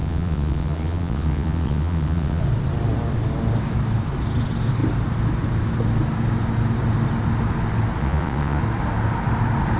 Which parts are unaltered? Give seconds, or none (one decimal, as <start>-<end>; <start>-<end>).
2.4-8.0; 8.6-9.8